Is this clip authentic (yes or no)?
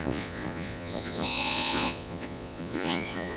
no